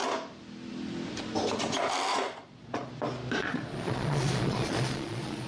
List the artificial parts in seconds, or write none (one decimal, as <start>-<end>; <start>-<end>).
2.1-2.9; 3.4-5.5